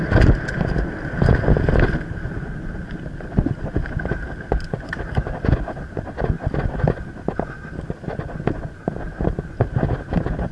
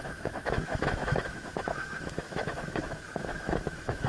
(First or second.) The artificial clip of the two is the second